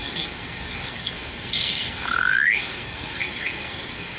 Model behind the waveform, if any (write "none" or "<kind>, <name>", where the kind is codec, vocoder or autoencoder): codec, SNAC